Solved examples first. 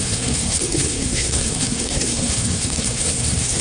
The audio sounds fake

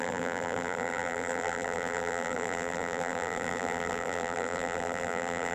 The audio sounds fake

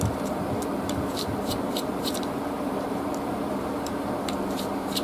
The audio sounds fake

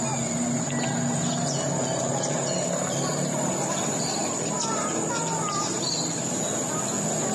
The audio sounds real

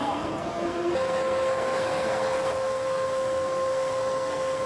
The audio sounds fake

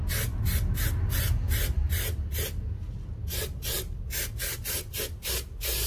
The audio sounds real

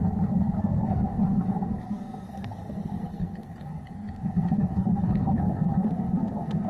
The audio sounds fake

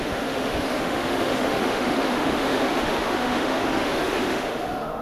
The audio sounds fake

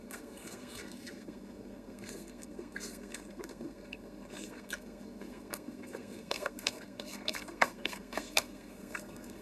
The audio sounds fake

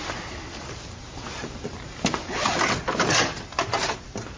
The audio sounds real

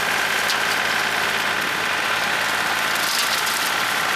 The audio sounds real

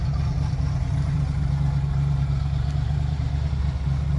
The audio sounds real